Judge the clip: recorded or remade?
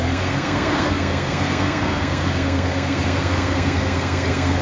remade